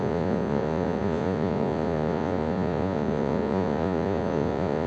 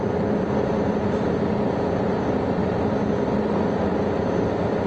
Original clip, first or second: second